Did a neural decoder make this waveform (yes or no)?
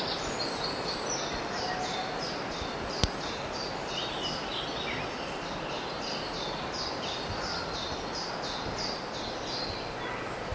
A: no